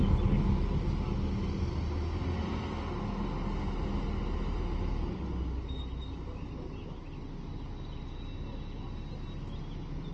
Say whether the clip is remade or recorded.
recorded